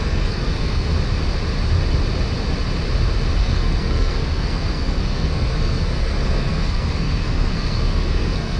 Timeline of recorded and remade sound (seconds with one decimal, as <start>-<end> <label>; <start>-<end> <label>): 0.0-0.9 remade; 0.9-3.4 recorded; 3.4-8.6 remade